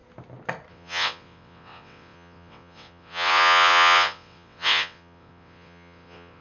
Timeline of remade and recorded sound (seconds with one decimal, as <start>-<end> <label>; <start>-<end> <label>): 0.0-0.7 recorded; 0.7-6.4 remade